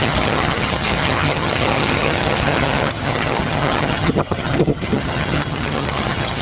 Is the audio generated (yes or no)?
yes